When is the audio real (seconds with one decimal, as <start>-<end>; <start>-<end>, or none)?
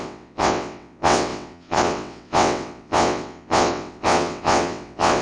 none